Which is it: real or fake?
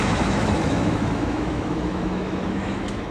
fake